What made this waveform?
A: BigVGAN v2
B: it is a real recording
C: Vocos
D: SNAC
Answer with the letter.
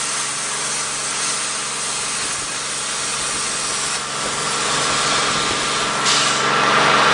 B